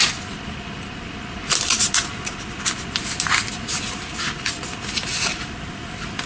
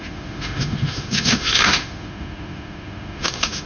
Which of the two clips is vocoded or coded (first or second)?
second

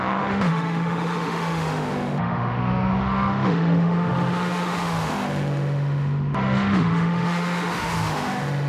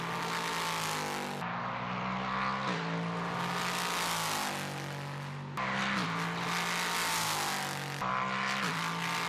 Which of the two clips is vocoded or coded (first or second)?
first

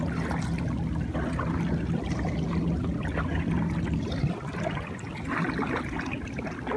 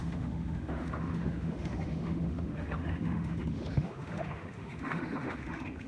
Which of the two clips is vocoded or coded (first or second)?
second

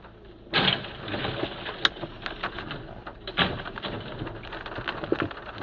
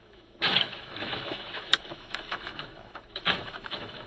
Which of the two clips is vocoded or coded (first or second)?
second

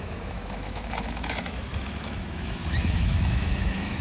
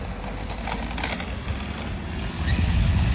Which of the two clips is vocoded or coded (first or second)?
first